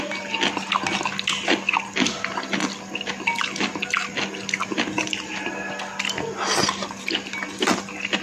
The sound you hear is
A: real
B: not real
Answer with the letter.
A